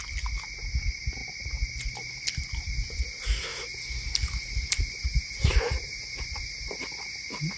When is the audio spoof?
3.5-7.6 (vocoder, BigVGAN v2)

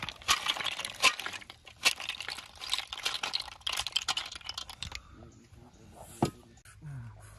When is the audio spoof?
none

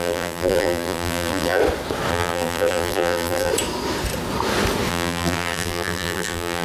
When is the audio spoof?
0.0-1.6 (vocoder, BigVGAN v2); 2.1-3.5; 4.9-6.6

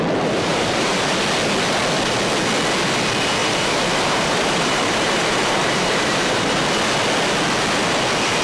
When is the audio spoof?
0.5-1.2 (vocoder, BigVGAN v2); 3.4-6.6